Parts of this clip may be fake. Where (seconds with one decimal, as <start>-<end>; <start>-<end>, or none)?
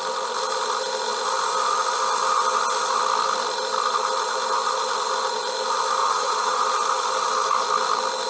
6.0-6.6